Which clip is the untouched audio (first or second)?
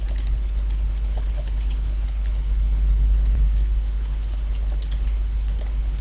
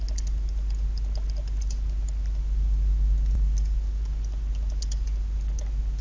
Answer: second